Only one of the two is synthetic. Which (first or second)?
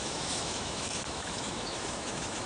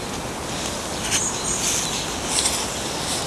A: first